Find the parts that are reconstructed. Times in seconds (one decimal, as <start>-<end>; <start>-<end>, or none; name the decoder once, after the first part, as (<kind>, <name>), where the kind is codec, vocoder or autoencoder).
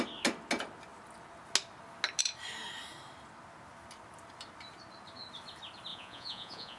5.9-6.8 (vocoder, Vocos)